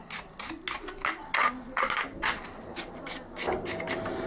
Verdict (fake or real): real